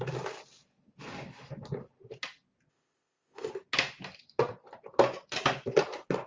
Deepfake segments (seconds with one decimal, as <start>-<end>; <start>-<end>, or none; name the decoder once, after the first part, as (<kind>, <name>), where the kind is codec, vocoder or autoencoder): 2.7-3.5 (codec, ZipCodec)